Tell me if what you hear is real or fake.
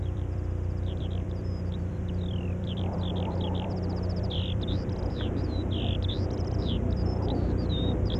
fake